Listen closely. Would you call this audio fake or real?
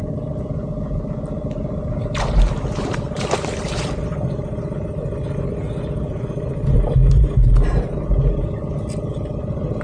real